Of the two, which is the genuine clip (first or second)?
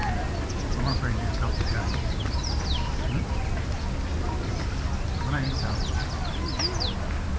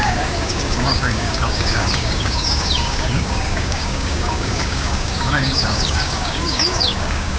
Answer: first